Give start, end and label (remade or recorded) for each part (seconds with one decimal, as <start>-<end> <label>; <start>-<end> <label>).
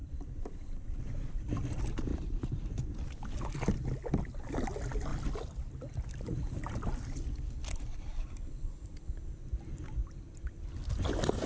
0.0-1.0 remade; 1.0-2.1 recorded; 2.1-2.7 remade; 2.7-5.1 recorded; 5.1-5.7 remade; 5.7-10.0 recorded; 10.0-10.5 remade; 10.5-11.5 recorded